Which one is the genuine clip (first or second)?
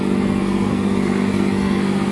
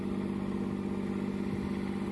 second